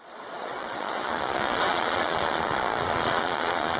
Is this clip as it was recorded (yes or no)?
no